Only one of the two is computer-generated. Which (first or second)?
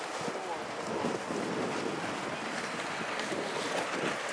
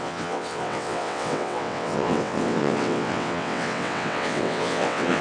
second